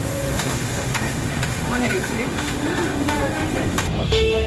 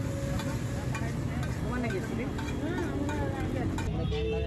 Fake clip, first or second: first